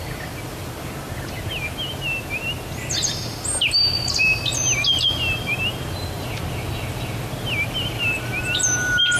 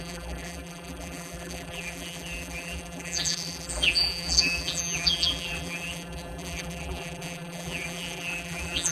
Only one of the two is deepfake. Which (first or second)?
second